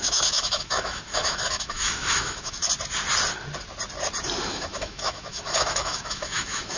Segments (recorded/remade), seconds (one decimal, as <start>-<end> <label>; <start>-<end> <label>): 0.0-2.6 remade; 2.6-4.4 recorded; 4.4-6.8 remade